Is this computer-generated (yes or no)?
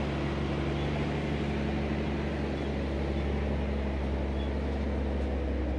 no